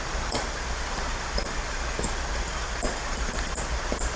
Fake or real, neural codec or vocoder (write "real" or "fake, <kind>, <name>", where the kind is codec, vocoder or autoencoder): real